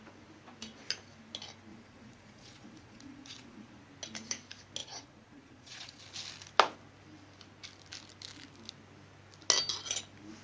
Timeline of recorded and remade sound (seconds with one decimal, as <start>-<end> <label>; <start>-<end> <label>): 0.0-1.7 recorded; 1.7-3.8 remade; 3.8-4.8 recorded; 4.8-6.0 remade; 6.0-10.4 recorded